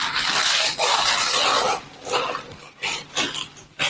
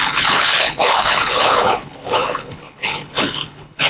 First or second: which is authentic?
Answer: first